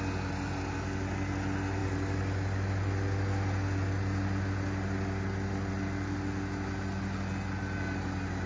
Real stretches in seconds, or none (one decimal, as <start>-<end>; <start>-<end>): 0.0-8.5